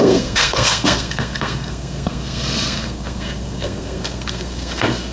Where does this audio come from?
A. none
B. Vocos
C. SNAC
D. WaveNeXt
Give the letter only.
C